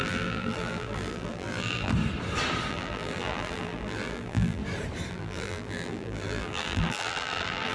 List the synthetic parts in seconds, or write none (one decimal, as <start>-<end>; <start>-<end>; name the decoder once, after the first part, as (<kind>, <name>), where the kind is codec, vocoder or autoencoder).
0.0-1.9 (vocoder, BigVGAN v2); 2.7-4.6; 5.1-7.7